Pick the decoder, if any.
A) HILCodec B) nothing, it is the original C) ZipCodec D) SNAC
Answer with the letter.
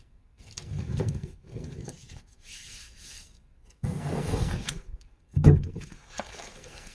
D